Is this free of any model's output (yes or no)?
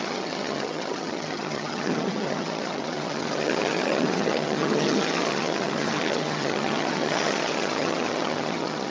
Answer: no